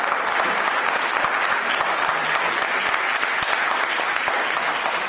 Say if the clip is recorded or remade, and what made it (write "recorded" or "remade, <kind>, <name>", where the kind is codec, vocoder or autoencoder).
recorded